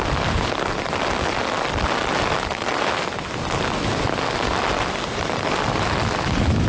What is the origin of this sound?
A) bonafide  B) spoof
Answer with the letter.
A